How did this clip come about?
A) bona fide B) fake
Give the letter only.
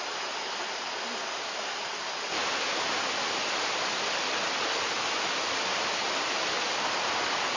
A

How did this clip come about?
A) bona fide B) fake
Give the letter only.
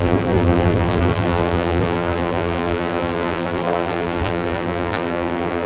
B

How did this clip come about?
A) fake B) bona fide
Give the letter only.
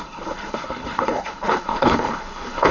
A